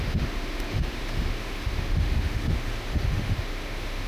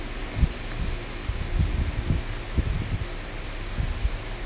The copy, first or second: first